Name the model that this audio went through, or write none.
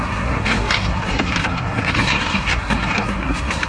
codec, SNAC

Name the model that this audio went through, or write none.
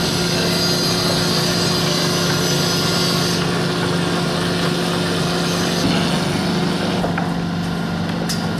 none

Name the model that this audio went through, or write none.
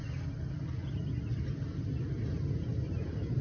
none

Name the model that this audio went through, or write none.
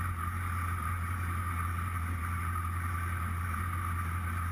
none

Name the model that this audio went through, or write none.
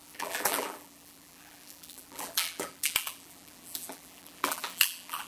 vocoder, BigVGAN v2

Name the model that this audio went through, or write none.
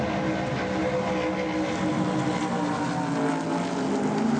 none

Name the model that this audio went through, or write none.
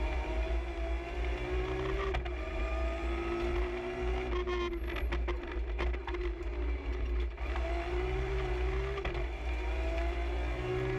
none